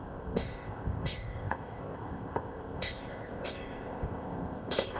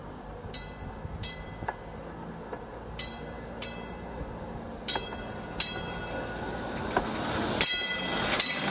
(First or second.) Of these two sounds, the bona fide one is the second